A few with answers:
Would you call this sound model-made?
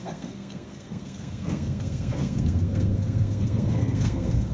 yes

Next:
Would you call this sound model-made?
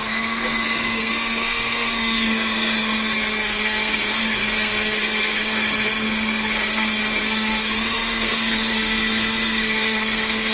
yes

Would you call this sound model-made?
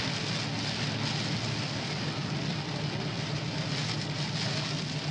no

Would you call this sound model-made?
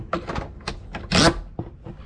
no